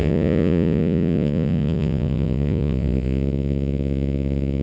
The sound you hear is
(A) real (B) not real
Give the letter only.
B